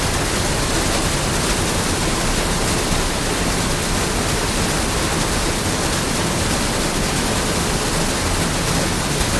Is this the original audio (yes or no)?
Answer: yes